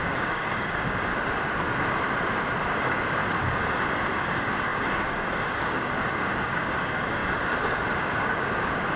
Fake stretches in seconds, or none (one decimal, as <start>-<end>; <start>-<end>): 0.0-1.1; 2.6-3.2; 4.1-7.2; 8.0-9.0